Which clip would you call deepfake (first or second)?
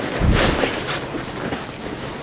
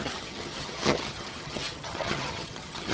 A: second